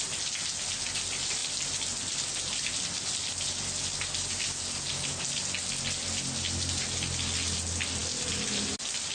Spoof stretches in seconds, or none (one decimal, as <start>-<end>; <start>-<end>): none